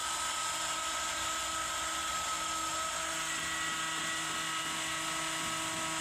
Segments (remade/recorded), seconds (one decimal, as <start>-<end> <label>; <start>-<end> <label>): 0.0-6.0 recorded